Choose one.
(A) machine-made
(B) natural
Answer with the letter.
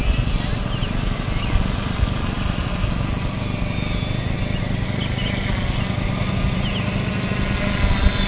B